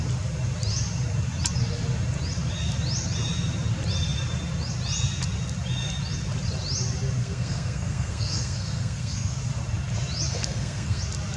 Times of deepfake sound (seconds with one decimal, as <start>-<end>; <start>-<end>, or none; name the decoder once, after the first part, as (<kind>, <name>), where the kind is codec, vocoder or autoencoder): 7.2-9.4 (codec, SNAC); 10.3-11.0